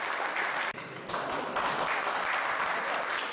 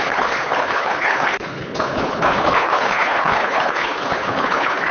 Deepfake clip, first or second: second